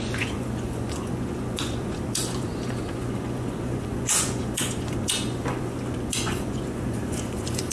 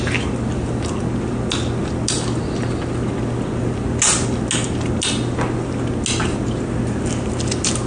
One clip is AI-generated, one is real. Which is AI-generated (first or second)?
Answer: first